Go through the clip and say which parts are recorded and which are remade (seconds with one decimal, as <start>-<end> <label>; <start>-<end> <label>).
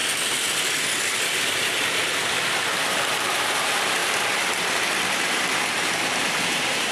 0.0-3.1 recorded; 3.1-4.0 remade; 4.0-5.3 recorded; 5.3-6.9 remade